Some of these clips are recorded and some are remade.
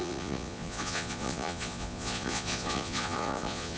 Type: remade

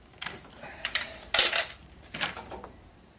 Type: remade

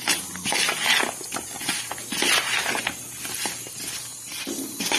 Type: recorded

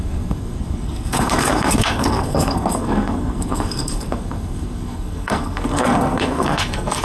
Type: remade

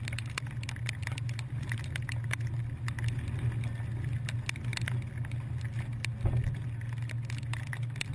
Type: recorded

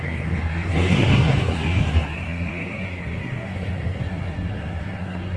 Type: remade